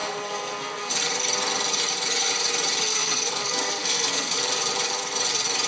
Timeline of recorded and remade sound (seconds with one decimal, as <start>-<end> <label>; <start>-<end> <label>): 0.0-0.9 remade; 0.9-2.9 recorded; 2.9-4.4 remade; 4.4-5.7 recorded